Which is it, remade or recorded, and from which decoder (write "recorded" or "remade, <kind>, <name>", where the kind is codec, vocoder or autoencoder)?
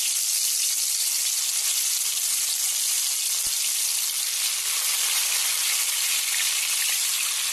recorded